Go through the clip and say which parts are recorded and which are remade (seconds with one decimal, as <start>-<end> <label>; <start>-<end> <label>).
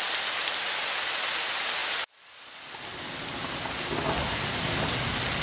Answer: 0.0-5.4 recorded